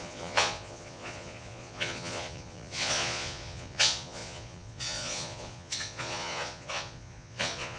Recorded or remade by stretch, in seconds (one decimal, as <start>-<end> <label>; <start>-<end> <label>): 0.0-7.8 remade